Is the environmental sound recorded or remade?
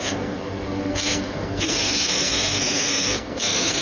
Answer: remade